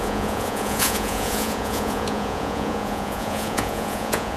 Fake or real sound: fake